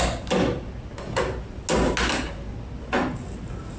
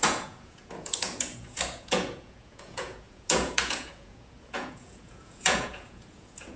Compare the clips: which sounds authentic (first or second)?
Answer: first